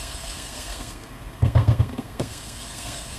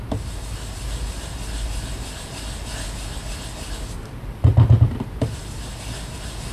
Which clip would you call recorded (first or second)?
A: second